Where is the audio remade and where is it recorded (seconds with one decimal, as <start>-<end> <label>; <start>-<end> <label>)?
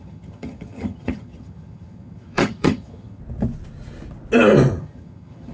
0.0-3.2 remade; 3.2-4.8 recorded; 4.8-5.5 remade